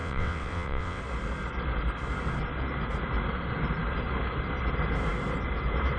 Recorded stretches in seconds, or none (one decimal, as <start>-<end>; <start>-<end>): 1.0-6.0